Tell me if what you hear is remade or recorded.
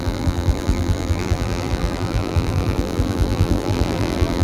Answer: remade